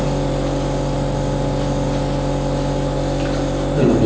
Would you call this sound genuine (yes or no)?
yes